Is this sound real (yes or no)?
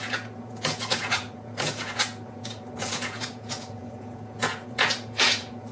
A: no